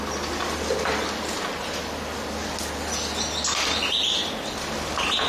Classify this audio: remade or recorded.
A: recorded